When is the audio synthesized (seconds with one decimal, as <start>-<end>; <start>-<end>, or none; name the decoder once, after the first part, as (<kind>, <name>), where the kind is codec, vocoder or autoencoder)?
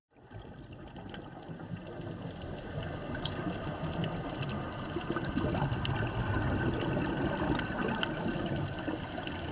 none